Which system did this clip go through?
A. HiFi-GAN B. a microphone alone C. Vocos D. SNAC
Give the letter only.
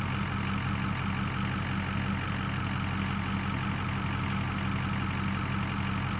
B